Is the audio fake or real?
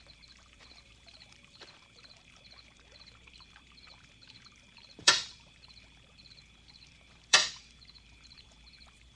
fake